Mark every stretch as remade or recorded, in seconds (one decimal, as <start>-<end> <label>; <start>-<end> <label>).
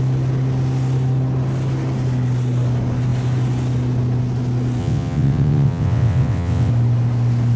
0.0-4.8 recorded; 4.8-6.7 remade; 6.7-7.6 recorded